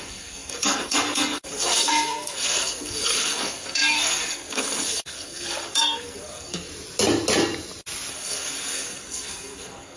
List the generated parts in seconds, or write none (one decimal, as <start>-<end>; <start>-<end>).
0.0-6.7; 8.1-10.0